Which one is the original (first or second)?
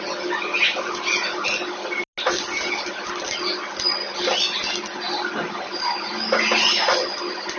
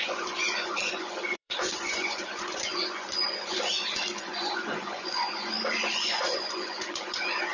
first